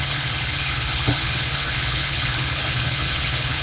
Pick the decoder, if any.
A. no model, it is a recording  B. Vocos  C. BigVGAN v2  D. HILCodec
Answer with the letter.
D